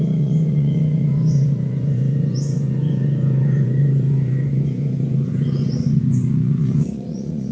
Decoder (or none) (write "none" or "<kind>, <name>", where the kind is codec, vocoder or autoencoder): vocoder, Vocos